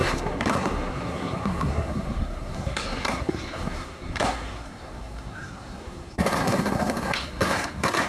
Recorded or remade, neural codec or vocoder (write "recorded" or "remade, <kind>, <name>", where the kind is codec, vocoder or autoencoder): remade, codec, SNAC